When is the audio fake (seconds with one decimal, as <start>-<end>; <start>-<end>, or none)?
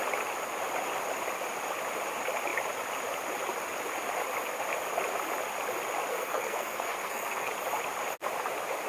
6.1-7.5